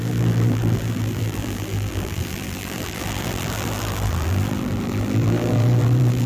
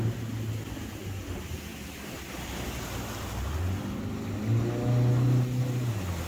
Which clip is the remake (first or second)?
first